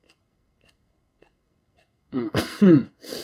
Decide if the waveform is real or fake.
fake